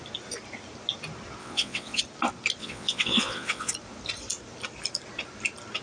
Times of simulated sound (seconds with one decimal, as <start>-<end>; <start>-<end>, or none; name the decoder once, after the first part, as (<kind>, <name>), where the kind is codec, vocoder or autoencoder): 1.4-2.0 (vocoder, WaveNeXt); 2.6-3.7